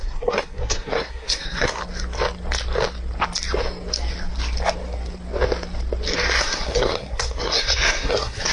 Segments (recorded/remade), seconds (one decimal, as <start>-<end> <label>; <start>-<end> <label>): 0.0-1.8 remade; 1.8-6.4 recorded; 6.4-8.5 remade

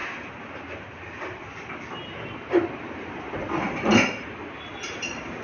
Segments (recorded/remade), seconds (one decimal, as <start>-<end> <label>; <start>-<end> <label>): 0.0-5.4 recorded

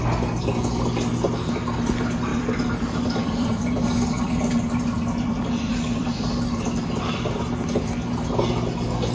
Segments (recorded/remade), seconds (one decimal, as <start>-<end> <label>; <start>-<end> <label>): 0.0-2.3 recorded; 2.3-7.3 remade; 7.3-9.1 recorded

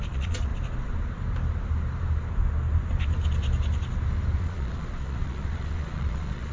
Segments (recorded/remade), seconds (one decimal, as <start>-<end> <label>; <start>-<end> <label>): 0.0-0.5 remade; 0.5-4.4 recorded; 4.4-6.5 remade

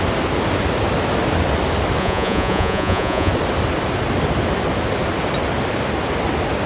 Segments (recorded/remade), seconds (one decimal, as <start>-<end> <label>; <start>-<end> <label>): 0.0-2.0 recorded; 2.0-3.3 remade; 3.3-6.7 recorded